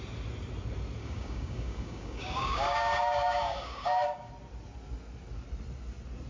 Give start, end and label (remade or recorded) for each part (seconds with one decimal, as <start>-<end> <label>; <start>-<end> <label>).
0.0-1.0 recorded; 1.0-4.3 remade; 4.3-6.3 recorded